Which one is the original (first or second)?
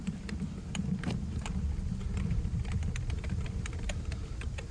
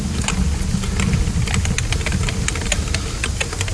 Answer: second